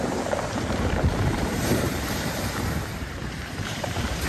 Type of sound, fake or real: fake